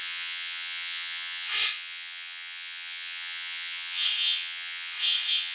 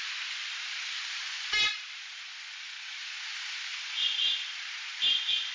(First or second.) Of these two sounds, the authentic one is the second